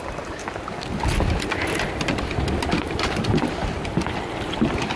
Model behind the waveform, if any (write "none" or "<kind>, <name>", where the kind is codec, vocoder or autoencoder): none